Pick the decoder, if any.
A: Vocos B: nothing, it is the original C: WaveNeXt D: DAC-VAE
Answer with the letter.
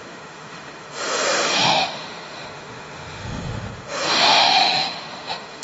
D